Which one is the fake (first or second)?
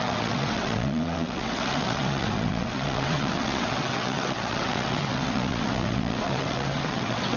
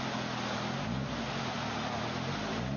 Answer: first